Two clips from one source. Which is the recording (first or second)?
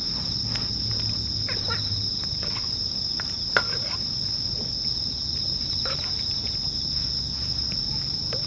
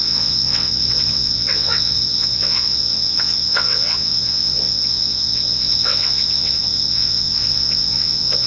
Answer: first